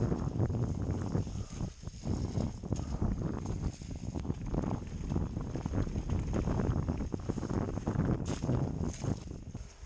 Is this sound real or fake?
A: real